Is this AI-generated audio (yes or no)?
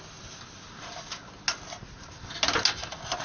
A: no